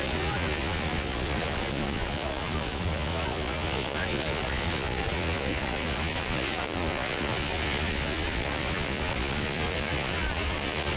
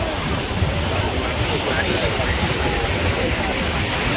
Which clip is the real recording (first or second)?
second